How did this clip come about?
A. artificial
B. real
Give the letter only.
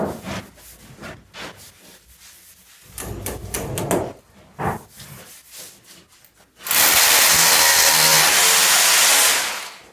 B